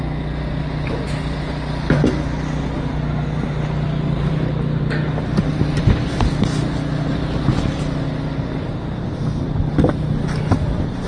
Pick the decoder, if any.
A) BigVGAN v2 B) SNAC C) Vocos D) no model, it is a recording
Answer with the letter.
D